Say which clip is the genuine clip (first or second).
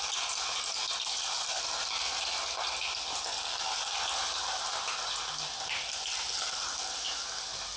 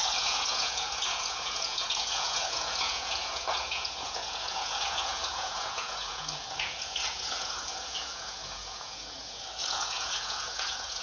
first